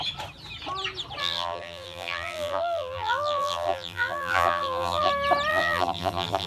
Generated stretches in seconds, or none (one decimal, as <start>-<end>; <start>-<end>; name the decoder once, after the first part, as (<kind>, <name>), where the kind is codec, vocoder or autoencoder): 1.2-5.1 (vocoder, BigVGAN v2); 5.5-6.5